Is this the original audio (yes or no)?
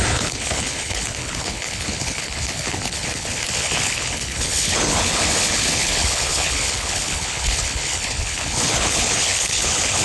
no